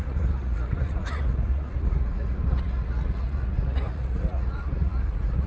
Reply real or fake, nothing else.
fake